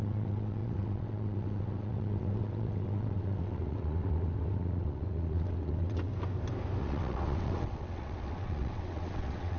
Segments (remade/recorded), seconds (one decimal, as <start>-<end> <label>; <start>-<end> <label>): 0.0-6.1 remade; 6.1-6.8 recorded; 6.8-9.6 remade